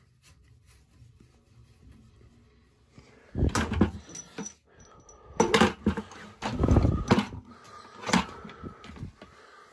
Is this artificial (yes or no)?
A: no